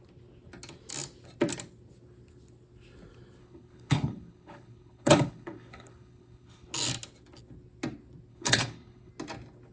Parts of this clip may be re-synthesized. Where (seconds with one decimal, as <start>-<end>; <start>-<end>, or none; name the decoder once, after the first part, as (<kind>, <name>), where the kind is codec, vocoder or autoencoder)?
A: 3.4-6.7 (codec, HILCodec); 8.3-9.1

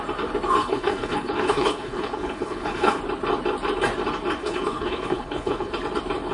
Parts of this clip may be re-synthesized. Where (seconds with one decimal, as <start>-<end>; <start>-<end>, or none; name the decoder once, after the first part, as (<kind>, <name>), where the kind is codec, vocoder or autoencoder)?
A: 0.6-3.0 (codec, HILCodec); 4.4-5.7

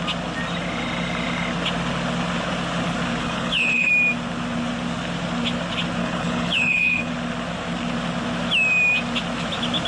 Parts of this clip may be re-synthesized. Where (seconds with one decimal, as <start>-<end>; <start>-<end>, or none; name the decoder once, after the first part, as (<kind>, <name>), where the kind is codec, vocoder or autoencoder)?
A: 3.2-3.9 (codec, HILCodec); 6.0-7.1

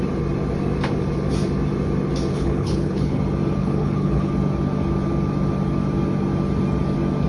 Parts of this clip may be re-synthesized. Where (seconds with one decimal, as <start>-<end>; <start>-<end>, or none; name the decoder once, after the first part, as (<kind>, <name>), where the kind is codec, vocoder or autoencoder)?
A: 2.3-3.2 (codec, HILCodec); 3.6-4.3

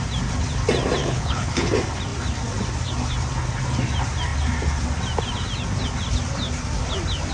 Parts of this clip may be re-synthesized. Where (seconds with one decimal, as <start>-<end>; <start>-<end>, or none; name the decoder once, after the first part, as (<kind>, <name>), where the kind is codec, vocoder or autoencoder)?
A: 1.0-1.7 (codec, HILCodec)